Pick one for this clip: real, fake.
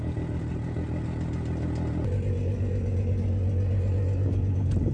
real